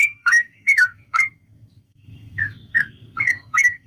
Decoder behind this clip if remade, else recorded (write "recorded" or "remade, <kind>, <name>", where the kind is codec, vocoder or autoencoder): remade, codec, SNAC